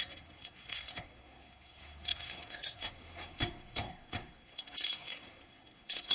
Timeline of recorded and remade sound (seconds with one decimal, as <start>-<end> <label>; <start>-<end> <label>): 0.0-6.1 remade